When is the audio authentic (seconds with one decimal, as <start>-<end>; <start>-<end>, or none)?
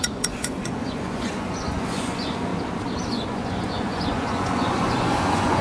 2.5-3.1